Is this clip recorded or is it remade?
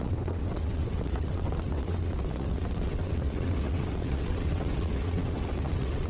remade